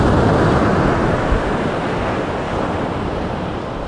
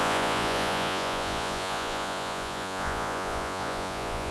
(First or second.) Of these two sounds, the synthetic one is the second